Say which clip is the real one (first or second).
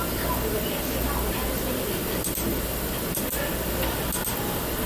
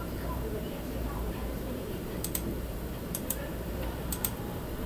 first